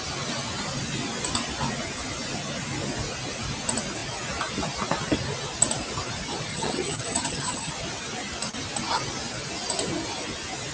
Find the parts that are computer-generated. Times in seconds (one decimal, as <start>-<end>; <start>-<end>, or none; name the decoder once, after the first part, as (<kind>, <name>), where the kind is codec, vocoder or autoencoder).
6.5-7.7 (vocoder, HiFi-GAN)